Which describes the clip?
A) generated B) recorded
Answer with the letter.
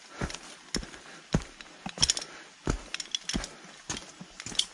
B